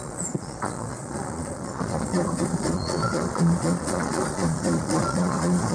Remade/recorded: remade